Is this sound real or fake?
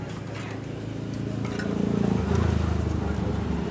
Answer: real